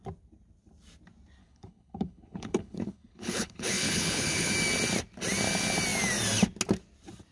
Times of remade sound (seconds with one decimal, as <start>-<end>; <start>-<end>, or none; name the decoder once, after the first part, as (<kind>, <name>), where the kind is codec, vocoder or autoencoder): 1.4-4.5 (codec, HILCodec)